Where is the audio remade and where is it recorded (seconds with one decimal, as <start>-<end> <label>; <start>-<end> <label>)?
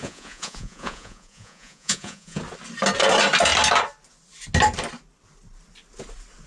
0.0-2.4 remade; 2.4-6.5 recorded